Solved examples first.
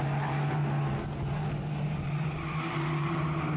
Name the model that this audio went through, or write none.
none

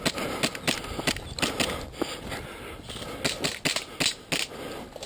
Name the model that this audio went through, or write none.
none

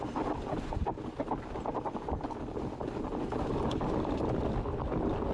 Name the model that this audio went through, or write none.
none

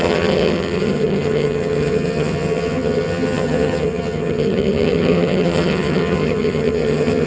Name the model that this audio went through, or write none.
vocoder, HiFi-GAN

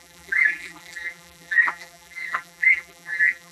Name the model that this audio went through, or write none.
vocoder, BigVGAN v2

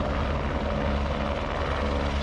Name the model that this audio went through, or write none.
none